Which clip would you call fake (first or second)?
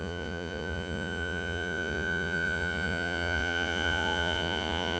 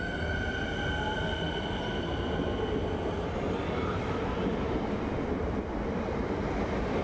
first